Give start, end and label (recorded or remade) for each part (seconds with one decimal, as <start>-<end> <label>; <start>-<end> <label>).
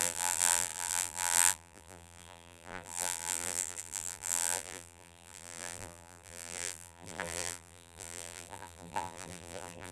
0.0-9.9 remade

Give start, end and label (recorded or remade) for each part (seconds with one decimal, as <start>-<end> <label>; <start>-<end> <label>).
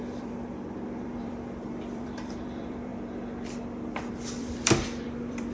0.0-2.9 remade; 2.9-4.1 recorded; 4.1-5.5 remade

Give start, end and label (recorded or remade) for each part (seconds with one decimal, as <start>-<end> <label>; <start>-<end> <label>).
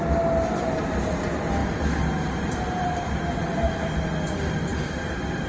0.0-1.6 recorded; 1.6-3.7 remade; 3.7-5.5 recorded